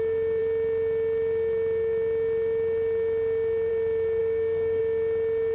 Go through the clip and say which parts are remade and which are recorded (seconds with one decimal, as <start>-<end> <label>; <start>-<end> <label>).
0.0-4.2 recorded; 4.2-4.8 remade; 4.8-5.5 recorded